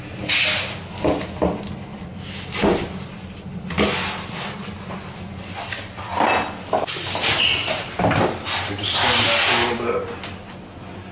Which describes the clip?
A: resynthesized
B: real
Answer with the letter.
B